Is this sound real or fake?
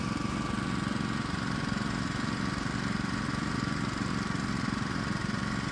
real